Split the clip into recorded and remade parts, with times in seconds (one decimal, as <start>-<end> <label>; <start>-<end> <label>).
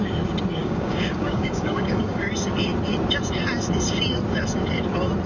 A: 0.0-0.6 recorded; 0.6-2.2 remade; 2.2-5.3 recorded